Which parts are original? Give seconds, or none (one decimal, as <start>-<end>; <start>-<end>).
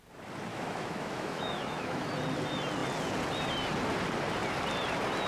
0.0-0.5; 2.1-5.3